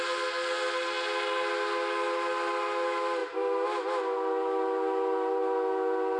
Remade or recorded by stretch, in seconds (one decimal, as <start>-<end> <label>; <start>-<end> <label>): 0.0-6.2 recorded